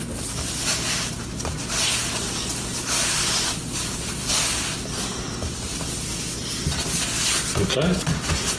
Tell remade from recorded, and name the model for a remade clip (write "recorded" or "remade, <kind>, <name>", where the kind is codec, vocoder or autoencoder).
recorded